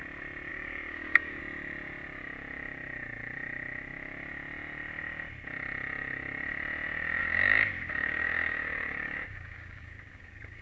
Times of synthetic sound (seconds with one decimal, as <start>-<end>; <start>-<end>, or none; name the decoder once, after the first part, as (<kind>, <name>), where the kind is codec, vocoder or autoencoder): 0.5-1.4 (codec, DAC); 7.2-10.6